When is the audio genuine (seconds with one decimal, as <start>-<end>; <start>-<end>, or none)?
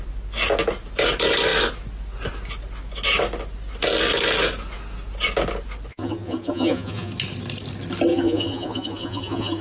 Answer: 0.0-5.9; 7.1-8.1